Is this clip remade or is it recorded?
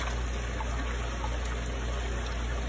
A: recorded